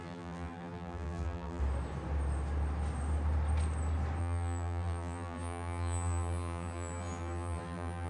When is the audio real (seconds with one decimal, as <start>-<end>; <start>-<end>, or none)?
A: 1.6-4.2